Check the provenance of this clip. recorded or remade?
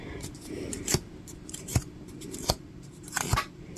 remade